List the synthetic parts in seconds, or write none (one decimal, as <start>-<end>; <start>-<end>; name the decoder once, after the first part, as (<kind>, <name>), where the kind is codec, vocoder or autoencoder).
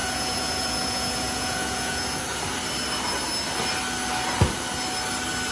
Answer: 0.0-2.2 (vocoder, Vocos)